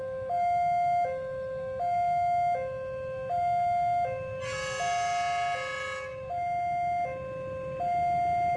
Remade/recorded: recorded